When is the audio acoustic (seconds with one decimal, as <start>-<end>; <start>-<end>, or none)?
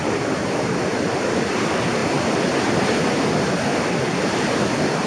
0.0-5.1